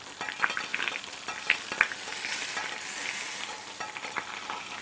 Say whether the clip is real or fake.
real